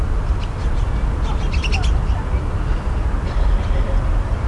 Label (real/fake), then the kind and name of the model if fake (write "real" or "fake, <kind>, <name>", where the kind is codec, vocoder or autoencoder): real